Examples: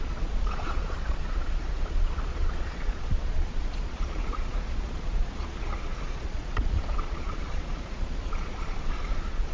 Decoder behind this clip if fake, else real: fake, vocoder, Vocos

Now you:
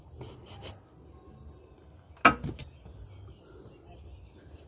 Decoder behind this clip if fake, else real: real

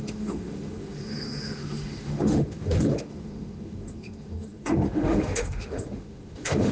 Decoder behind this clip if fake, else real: fake, autoencoder, DAC-VAE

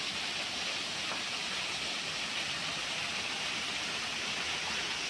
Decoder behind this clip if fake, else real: real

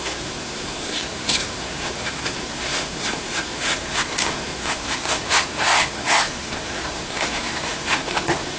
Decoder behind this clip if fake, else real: fake, codec, SNAC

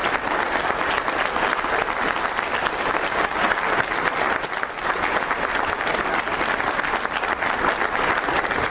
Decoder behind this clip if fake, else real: real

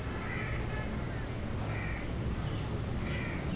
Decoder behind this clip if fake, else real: real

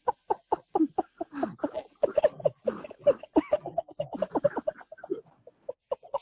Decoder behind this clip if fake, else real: real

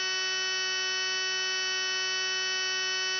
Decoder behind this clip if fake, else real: real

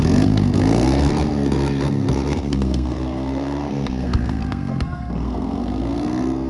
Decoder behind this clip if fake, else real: fake, codec, SNAC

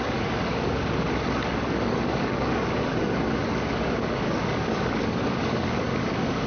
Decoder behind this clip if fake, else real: fake, codec, DAC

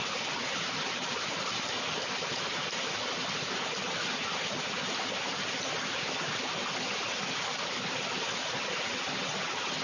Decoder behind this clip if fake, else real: real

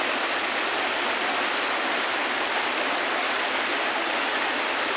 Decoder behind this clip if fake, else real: real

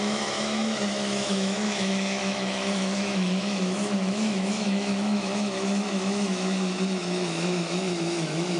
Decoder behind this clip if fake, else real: fake, autoencoder, DAC-VAE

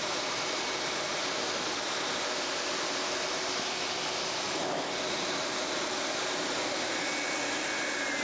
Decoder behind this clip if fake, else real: real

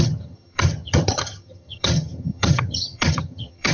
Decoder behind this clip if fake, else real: fake, vocoder, HiFi-GAN